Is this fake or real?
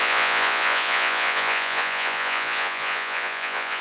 fake